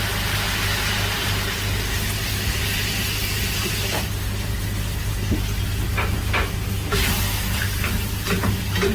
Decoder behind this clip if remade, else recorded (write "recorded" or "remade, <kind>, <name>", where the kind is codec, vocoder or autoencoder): recorded